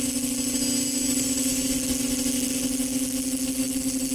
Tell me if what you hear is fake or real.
real